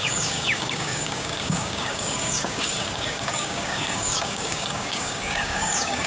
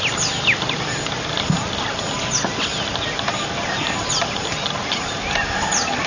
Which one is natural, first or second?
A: second